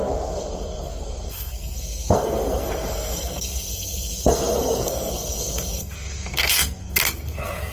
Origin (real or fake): fake